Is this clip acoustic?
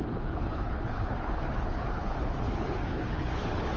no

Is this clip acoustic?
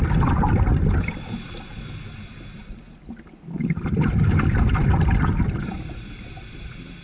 yes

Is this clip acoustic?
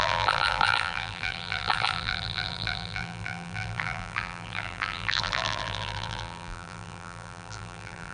no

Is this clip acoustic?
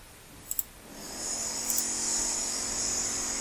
yes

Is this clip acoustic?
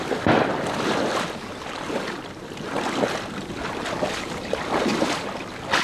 yes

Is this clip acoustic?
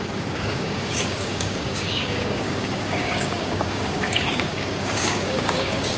no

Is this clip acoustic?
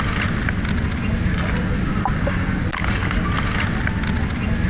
yes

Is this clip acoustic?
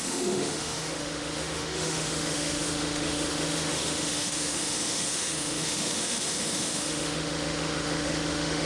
no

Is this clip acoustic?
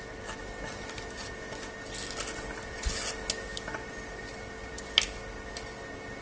yes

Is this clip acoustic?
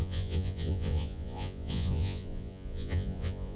no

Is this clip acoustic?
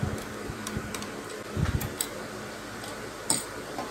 no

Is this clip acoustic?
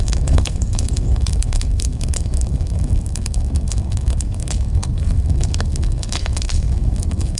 no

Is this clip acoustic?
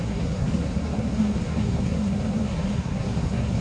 no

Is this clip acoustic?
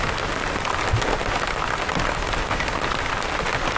yes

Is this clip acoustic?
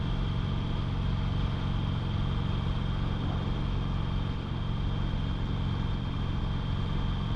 yes